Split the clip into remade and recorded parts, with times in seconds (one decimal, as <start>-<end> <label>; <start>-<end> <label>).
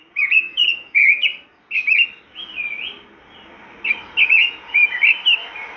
0.0-1.3 remade; 1.3-4.3 recorded; 4.3-4.8 remade; 4.8-5.8 recorded